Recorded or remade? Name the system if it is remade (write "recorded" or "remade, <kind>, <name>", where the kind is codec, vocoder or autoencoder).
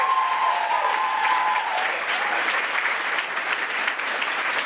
remade, vocoder, BigVGAN v2